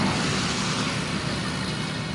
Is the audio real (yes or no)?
yes